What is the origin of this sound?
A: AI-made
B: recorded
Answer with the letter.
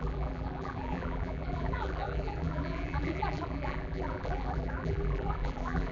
A